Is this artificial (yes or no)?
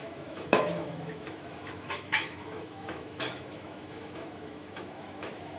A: yes